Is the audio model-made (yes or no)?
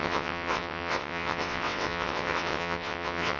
yes